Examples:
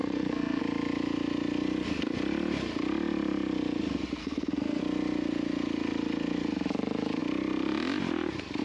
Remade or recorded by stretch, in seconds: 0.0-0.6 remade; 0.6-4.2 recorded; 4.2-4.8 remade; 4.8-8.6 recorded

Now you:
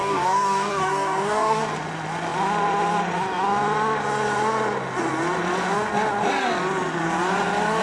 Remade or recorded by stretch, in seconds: 0.0-1.6 remade; 1.6-7.8 recorded

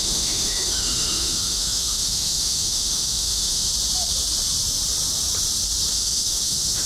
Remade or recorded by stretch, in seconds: 0.0-3.7 remade; 3.7-5.9 recorded; 5.9-6.9 remade

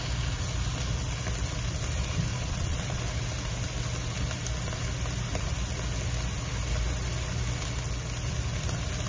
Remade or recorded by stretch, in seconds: 0.0-2.3 recorded; 2.3-3.0 remade; 3.0-9.1 recorded

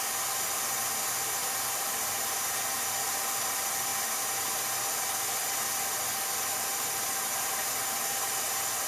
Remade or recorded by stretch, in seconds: 0.0-1.4 recorded; 1.4-2.6 remade; 2.6-6.7 recorded; 6.7-8.3 remade; 8.3-8.9 recorded